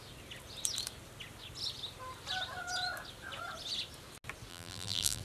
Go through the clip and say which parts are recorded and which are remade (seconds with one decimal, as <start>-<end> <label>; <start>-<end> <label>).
0.0-4.5 recorded; 4.5-5.2 remade